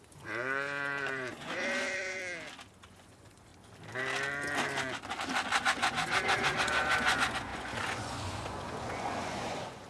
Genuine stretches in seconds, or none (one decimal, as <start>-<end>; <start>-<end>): 2.2-2.9; 3.5-5.6